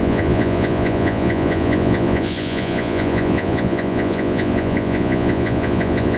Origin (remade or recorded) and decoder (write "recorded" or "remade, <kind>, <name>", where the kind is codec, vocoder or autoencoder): remade, vocoder, Vocos